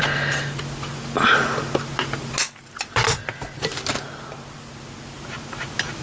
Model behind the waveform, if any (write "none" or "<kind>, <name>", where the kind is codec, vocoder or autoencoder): none